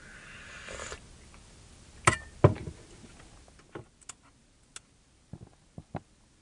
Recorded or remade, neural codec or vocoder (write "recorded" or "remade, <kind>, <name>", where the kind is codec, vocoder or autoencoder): recorded